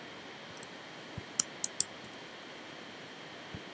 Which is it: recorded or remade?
recorded